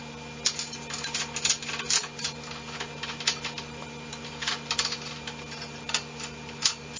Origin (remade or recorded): recorded